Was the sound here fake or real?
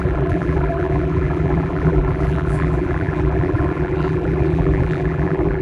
fake